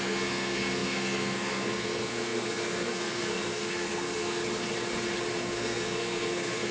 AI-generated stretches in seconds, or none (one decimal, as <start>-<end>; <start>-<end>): 0.0-4.4; 5.3-6.7